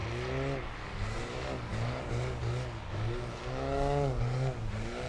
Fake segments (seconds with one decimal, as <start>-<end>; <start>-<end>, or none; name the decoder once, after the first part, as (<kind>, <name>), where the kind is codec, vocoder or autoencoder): 0.6-5.1 (codec, DAC)